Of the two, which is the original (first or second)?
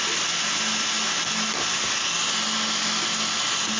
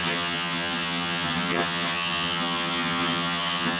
first